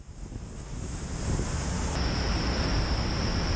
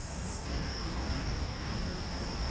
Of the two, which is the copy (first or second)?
second